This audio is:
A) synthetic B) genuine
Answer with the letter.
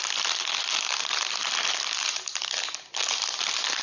B